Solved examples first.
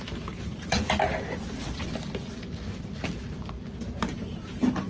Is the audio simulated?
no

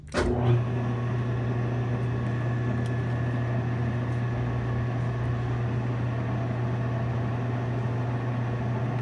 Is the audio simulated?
no